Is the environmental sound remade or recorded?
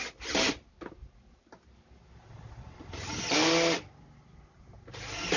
recorded